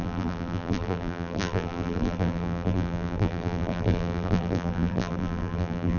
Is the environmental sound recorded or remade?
remade